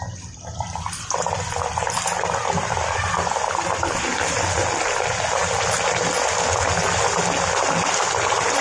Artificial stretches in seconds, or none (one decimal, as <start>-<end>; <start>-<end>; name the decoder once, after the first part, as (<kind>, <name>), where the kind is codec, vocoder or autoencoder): none